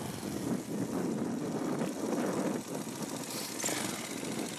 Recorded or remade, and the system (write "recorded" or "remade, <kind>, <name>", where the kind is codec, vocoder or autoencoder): recorded